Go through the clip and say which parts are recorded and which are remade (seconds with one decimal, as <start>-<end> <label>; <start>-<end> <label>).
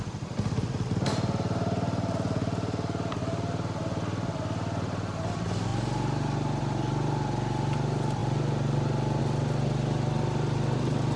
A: 0.0-11.2 recorded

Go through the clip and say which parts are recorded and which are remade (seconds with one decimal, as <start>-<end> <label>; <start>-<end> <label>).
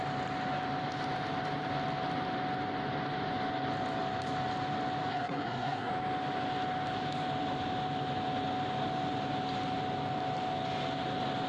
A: 0.0-5.1 recorded; 5.1-5.9 remade; 5.9-11.5 recorded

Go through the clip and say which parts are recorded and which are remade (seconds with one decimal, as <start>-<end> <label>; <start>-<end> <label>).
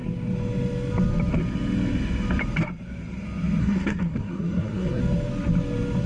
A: 0.0-3.6 recorded; 3.6-5.0 remade; 5.0-6.1 recorded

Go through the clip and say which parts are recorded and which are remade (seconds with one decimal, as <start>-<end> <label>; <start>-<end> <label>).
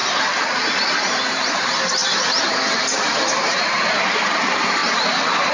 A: 0.0-0.8 recorded; 0.8-4.8 remade; 4.8-5.5 recorded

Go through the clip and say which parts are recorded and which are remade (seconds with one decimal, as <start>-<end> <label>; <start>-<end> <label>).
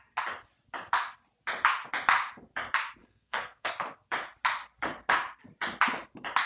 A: 0.0-3.0 recorded; 3.0-3.7 remade; 3.7-6.5 recorded